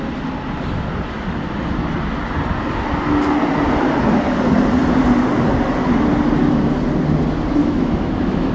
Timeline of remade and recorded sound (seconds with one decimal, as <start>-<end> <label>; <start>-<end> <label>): 0.0-7.6 recorded; 7.6-8.5 remade